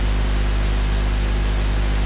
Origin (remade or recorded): recorded